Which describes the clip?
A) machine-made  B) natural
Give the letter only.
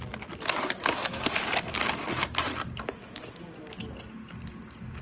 B